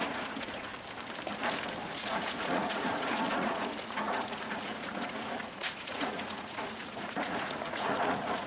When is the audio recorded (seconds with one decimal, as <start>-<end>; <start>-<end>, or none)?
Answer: 0.7-1.8